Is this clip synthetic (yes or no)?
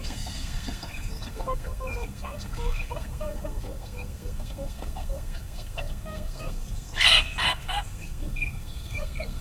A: yes